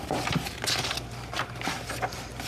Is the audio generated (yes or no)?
no